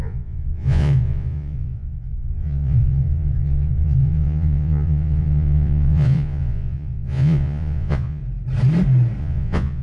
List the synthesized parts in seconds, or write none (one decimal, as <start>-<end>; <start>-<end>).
0.0-8.2; 9.2-9.8